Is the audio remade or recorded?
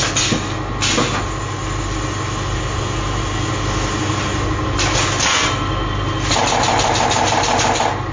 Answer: recorded